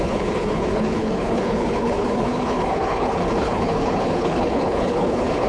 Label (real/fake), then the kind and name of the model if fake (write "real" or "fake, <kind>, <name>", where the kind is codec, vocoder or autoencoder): fake, codec, HILCodec